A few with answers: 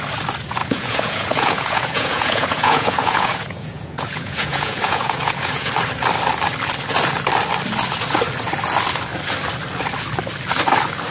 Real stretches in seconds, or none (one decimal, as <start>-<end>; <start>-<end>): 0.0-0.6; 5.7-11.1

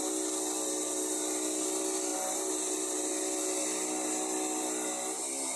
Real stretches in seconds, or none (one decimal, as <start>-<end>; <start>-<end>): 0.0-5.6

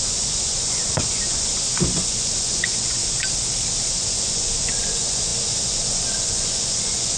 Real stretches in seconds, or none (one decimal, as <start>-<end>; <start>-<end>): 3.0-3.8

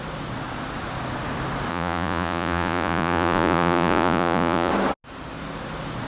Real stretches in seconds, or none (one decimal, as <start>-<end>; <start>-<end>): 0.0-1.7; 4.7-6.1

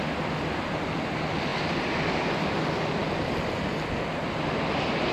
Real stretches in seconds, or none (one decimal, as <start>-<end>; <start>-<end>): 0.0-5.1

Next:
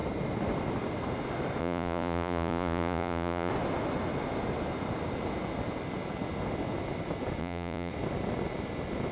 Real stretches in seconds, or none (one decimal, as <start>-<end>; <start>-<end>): 0.0-1.6; 3.5-7.4; 7.9-9.1

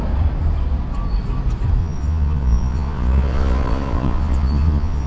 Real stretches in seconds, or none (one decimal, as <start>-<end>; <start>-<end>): 0.0-1.8

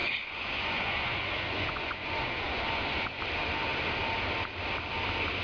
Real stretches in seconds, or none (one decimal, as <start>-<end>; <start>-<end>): 3.2-5.4